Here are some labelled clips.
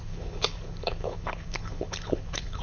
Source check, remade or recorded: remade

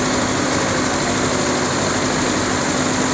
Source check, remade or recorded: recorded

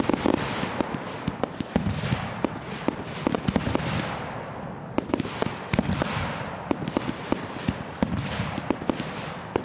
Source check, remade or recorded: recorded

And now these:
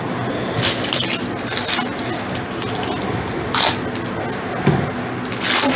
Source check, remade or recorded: recorded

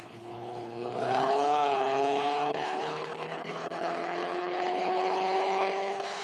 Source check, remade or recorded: remade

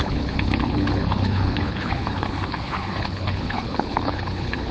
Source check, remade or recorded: remade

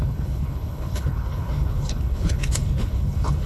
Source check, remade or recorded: remade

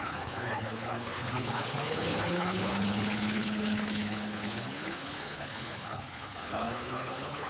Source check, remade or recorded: remade